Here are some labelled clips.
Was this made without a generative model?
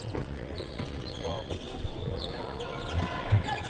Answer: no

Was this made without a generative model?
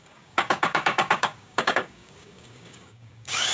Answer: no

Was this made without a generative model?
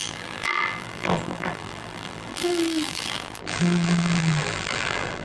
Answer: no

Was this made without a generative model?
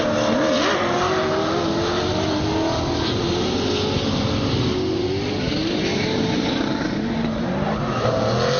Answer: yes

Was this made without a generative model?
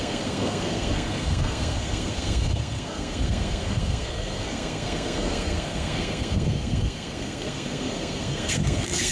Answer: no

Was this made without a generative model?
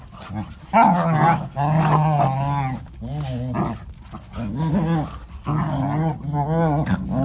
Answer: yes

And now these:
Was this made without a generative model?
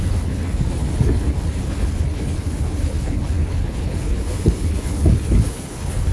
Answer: no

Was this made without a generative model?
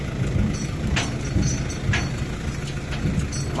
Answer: yes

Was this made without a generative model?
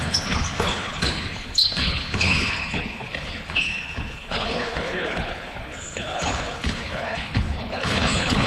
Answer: no